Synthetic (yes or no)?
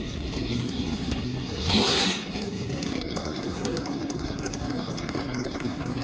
yes